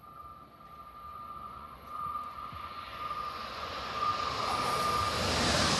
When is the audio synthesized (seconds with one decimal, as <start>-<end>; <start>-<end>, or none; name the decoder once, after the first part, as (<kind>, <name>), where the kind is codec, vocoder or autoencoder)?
1.1-4.1 (vocoder, Vocos)